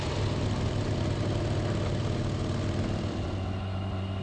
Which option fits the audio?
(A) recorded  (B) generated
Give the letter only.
A